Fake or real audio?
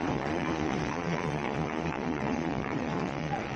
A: fake